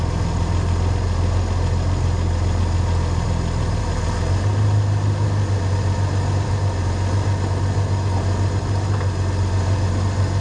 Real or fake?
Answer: real